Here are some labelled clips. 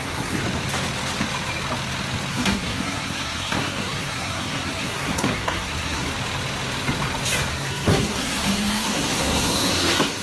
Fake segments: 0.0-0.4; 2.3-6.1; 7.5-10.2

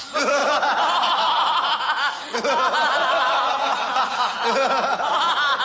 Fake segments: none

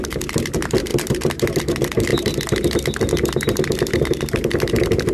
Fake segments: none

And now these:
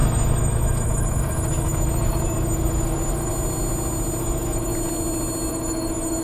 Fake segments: 0.0-3.3; 4.2-4.7; 5.5-6.2

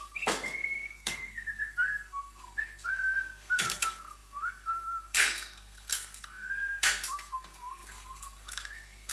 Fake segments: 0.0-9.1